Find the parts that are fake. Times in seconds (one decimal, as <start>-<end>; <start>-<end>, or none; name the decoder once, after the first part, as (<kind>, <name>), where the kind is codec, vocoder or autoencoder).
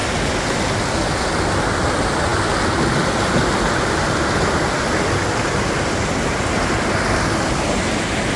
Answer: none